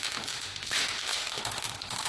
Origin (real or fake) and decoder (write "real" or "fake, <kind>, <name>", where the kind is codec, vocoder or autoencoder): fake, autoencoder, DAC-VAE